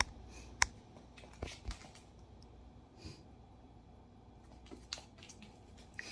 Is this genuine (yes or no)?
yes